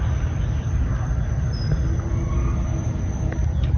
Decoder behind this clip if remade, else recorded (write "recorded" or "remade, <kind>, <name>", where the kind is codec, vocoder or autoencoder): recorded